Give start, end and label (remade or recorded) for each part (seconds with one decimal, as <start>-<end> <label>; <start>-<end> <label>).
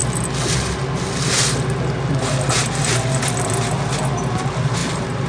0.0-5.3 recorded